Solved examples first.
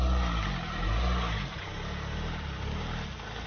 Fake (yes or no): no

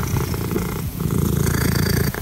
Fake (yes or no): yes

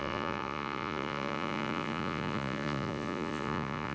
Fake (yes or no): yes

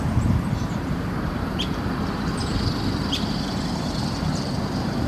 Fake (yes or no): yes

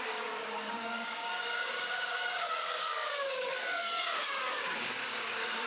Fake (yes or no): yes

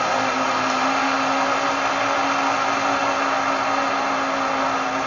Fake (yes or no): no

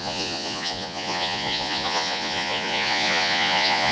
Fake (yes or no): yes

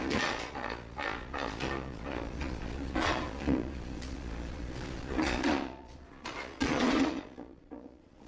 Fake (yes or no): yes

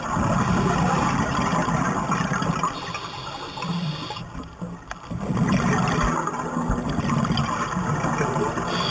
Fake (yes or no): no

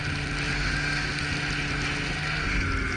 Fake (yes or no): no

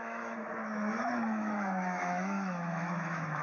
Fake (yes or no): yes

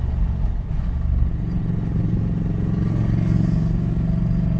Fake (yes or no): no